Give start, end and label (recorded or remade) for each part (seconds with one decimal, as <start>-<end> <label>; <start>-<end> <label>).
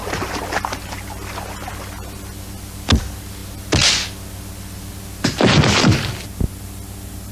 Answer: 0.0-7.3 recorded